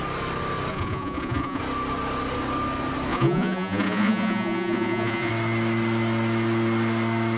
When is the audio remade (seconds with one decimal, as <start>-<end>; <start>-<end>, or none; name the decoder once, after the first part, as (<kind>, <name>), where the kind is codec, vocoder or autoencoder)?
0.7-1.6 (vocoder, Vocos); 3.1-5.3